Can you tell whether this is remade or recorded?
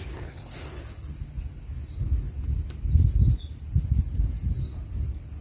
recorded